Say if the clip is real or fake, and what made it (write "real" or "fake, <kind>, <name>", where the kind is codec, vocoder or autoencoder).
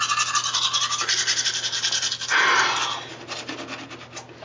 real